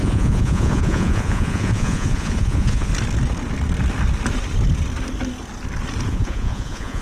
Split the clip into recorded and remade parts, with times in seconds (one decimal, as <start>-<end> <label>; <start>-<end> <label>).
0.0-2.9 remade; 2.9-6.1 recorded; 6.1-7.0 remade